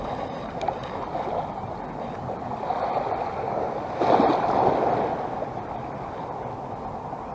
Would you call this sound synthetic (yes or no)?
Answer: no